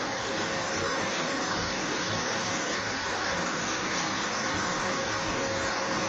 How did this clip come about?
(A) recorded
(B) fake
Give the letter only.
B